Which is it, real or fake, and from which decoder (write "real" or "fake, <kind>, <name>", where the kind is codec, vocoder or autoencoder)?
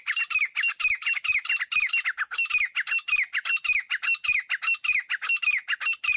real